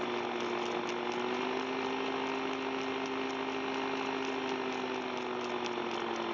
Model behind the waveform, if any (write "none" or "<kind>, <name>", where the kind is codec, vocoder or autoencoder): none